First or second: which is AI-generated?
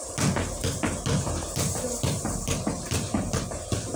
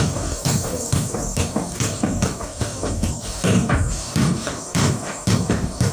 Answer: second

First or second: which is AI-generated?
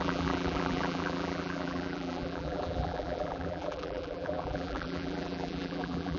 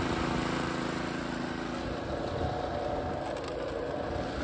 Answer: first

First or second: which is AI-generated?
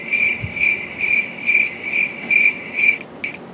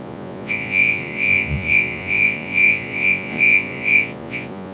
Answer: second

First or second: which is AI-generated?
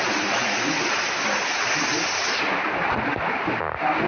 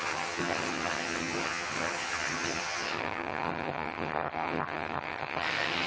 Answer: second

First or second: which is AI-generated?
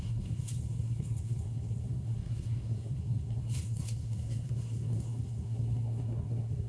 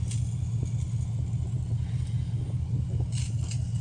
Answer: first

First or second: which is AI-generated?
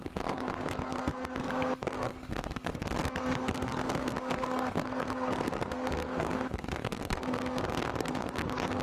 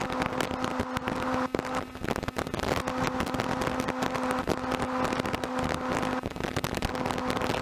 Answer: first